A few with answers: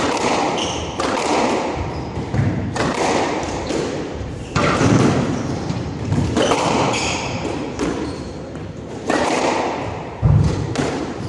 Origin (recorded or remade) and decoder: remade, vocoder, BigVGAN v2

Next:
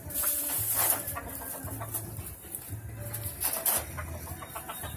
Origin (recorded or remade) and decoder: recorded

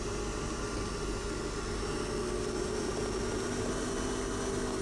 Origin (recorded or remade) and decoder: recorded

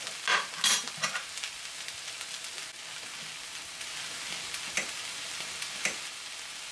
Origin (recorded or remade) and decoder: recorded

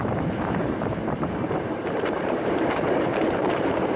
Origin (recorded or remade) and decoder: remade, vocoder, BigVGAN v2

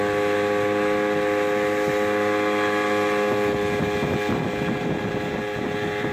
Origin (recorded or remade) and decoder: recorded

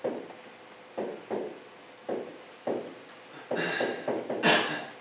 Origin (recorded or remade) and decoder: recorded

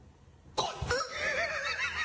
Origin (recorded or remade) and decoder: recorded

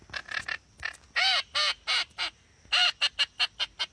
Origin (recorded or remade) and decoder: recorded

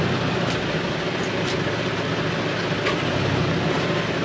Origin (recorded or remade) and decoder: recorded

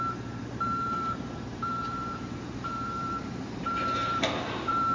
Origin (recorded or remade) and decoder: remade, vocoder, BigVGAN v2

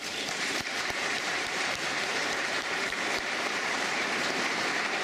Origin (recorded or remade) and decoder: remade, vocoder, BigVGAN v2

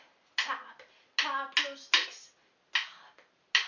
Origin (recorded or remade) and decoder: recorded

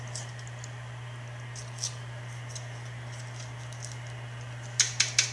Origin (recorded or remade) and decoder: recorded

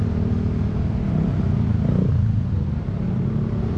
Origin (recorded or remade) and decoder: recorded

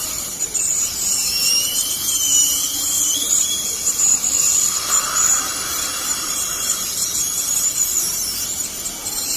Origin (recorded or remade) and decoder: remade, vocoder, BigVGAN v2